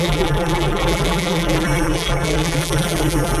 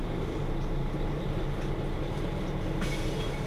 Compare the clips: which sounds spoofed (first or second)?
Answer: first